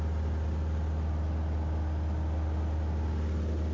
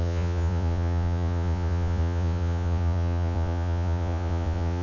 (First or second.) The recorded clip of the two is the first